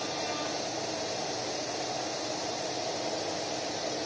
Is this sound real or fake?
real